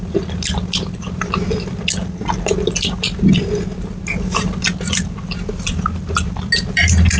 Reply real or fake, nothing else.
real